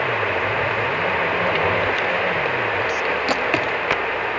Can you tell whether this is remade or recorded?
recorded